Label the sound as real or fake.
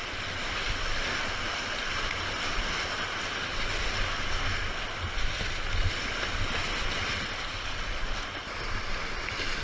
real